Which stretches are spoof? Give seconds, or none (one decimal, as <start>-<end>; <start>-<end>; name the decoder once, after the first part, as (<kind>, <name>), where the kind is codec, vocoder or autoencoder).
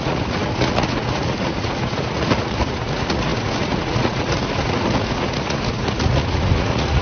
0.0-7.0 (vocoder, Vocos)